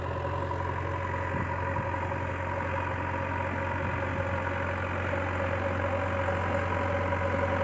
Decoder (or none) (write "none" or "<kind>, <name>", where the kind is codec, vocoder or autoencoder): none